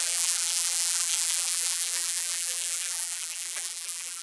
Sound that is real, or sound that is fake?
fake